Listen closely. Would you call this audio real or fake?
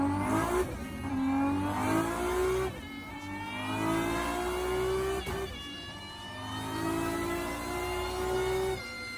real